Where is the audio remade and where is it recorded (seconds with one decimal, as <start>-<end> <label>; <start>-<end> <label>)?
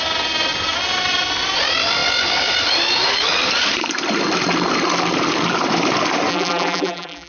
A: 0.0-6.3 recorded; 6.3-7.3 remade